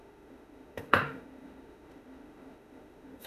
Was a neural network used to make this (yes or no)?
yes